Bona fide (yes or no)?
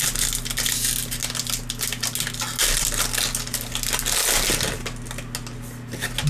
yes